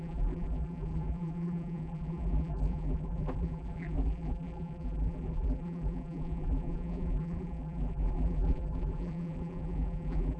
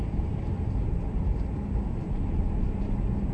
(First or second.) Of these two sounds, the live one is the second